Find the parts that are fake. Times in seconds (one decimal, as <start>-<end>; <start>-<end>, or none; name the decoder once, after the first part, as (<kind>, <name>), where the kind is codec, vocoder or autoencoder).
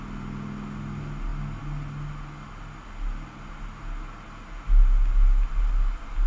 none